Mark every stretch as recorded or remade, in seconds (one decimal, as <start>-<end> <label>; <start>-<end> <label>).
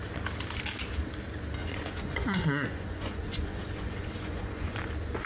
0.0-1.6 recorded; 1.6-4.8 remade; 4.8-5.3 recorded